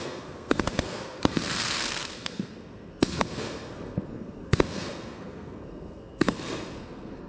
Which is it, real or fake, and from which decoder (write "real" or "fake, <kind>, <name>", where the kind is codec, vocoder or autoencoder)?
fake, codec, SNAC